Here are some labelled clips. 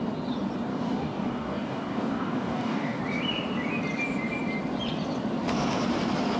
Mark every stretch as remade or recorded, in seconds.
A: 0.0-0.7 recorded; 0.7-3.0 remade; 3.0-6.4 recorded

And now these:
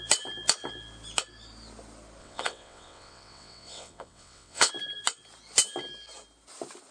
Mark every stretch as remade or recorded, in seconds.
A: 0.0-2.2 recorded; 2.2-4.7 remade; 4.7-6.9 recorded

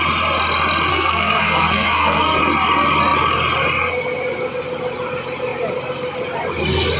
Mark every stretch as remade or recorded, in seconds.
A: 0.0-0.9 recorded; 0.9-2.4 remade; 2.4-7.0 recorded

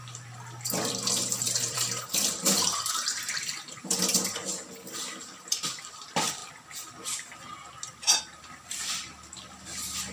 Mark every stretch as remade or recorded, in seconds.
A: 0.0-6.4 remade; 6.4-8.2 recorded; 8.2-10.1 remade

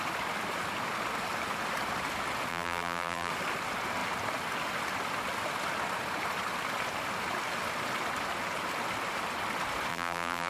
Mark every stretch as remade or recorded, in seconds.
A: 0.0-2.5 recorded; 2.5-3.3 remade; 3.3-9.9 recorded; 9.9-10.5 remade

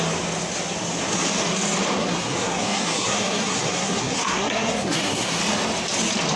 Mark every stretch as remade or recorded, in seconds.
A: 0.0-2.0 recorded; 2.0-5.4 remade; 5.4-6.4 recorded

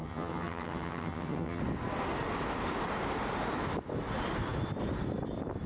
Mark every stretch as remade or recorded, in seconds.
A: 0.0-1.6 remade; 1.6-5.7 recorded